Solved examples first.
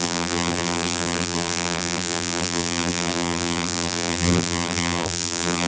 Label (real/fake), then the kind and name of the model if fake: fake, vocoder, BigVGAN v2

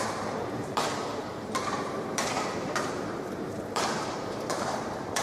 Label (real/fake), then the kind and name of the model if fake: fake, vocoder, BigVGAN v2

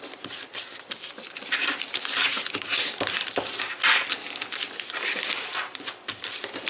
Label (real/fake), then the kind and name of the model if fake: real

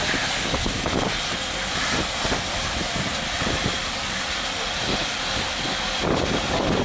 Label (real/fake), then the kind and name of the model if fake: fake, vocoder, BigVGAN v2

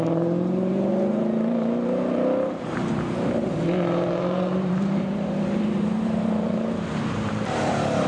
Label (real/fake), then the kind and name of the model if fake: fake, vocoder, BigVGAN v2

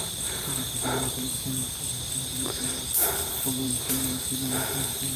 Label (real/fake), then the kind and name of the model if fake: fake, vocoder, BigVGAN v2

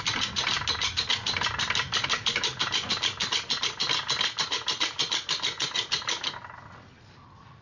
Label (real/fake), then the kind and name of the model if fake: real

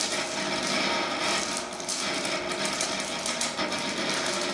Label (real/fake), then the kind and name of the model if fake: real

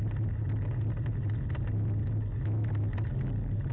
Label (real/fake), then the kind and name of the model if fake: real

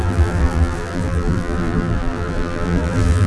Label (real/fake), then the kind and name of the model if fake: fake, vocoder, BigVGAN v2